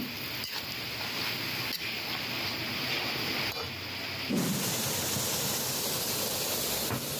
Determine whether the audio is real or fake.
real